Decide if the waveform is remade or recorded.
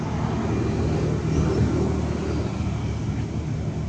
recorded